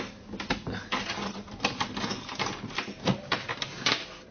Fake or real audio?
real